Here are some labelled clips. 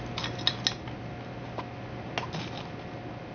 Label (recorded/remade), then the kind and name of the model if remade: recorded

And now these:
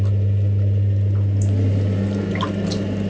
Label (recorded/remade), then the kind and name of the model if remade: recorded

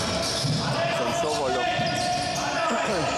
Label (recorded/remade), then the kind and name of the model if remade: recorded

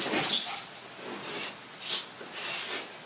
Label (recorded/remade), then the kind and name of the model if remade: recorded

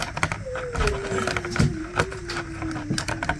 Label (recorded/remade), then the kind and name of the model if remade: recorded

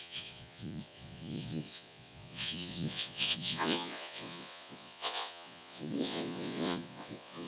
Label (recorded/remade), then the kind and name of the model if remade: remade, vocoder, Vocos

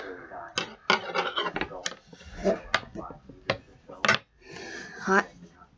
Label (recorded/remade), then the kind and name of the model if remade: recorded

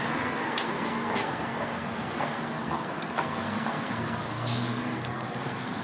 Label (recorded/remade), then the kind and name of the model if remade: remade, codec, SNAC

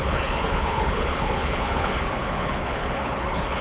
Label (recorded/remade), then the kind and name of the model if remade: remade, codec, HILCodec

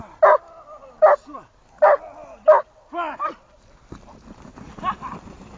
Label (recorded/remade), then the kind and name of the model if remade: recorded